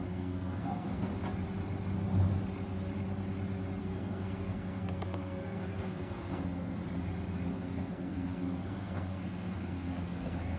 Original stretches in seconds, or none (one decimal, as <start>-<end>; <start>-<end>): 1.1-3.8; 6.8-7.5